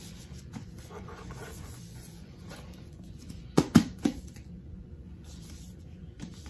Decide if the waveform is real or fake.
fake